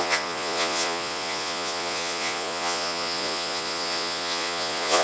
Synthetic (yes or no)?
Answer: yes